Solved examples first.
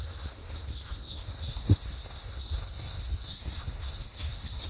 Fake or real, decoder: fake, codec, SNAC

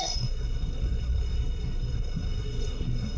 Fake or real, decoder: fake, codec, SNAC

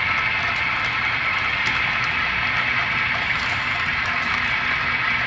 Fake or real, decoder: real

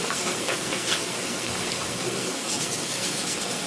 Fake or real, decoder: fake, codec, SNAC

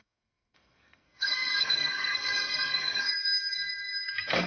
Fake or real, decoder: fake, codec, SNAC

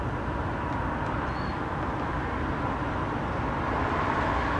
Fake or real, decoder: real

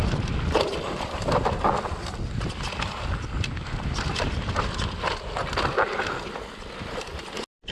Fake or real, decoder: real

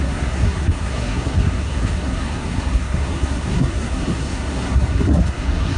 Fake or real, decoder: fake, codec, SNAC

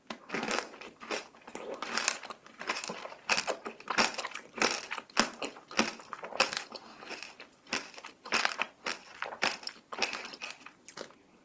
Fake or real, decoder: real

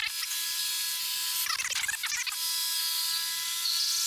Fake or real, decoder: real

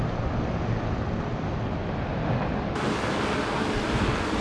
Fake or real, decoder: real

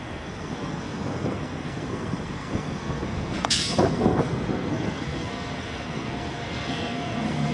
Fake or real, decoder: fake, codec, SNAC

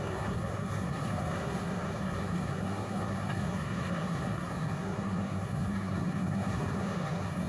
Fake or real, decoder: fake, codec, SNAC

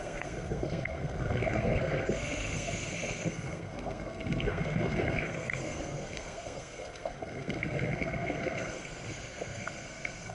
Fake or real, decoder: fake, codec, SNAC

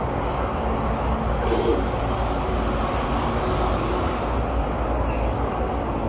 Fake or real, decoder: real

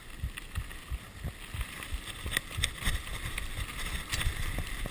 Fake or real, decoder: real